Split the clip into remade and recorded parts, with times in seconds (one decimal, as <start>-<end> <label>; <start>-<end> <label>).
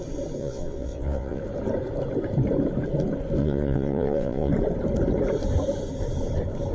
0.0-0.4 recorded; 0.4-1.4 remade; 1.4-3.4 recorded; 3.4-4.5 remade; 4.5-6.7 recorded